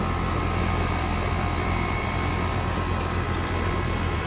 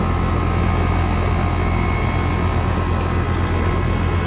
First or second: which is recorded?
second